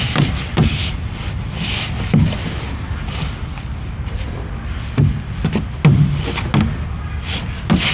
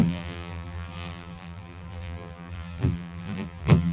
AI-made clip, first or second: second